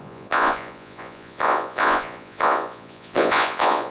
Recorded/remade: remade